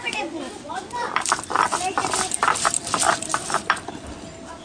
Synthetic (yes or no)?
no